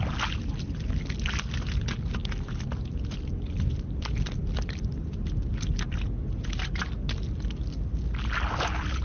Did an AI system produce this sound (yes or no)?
no